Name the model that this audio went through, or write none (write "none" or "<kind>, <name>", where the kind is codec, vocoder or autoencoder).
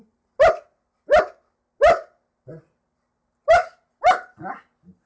none